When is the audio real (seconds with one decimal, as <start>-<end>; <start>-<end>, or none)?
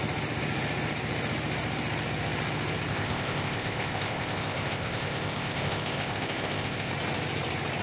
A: 0.0-2.9; 6.9-7.8